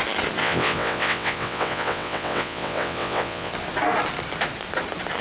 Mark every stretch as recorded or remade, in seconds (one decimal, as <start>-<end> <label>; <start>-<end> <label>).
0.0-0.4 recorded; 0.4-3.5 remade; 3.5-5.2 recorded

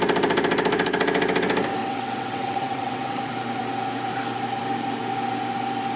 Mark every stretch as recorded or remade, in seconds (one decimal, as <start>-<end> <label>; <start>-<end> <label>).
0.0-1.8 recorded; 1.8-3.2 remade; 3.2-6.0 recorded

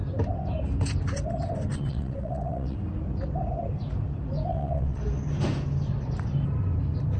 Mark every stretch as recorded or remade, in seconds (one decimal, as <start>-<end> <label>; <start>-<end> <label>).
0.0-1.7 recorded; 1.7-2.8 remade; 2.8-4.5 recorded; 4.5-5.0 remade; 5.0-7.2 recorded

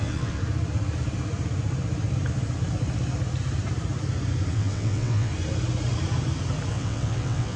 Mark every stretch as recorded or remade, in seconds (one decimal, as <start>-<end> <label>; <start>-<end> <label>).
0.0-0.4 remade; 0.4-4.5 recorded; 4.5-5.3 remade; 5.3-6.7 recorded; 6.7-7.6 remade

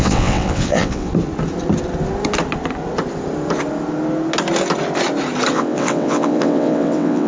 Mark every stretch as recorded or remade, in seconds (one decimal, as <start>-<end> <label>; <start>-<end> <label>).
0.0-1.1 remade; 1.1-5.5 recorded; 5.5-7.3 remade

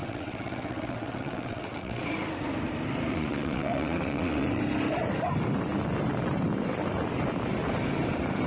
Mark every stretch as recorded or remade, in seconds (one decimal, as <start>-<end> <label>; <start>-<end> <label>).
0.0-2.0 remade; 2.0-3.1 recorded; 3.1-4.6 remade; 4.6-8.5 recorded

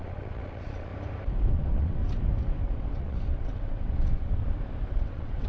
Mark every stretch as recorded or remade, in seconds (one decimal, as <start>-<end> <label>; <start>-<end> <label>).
0.0-0.9 remade; 0.9-1.5 recorded; 1.5-2.0 remade; 2.0-2.6 recorded; 2.6-4.4 remade; 4.4-4.9 recorded; 4.9-5.5 remade